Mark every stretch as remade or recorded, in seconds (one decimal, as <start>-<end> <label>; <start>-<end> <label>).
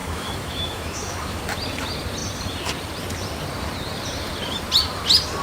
0.0-1.4 remade; 1.4-5.4 recorded